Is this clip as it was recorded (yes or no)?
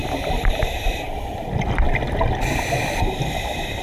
yes